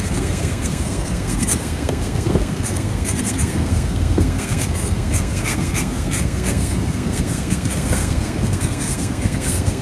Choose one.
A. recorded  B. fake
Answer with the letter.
B